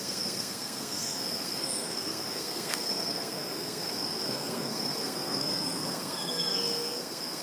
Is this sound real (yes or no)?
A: no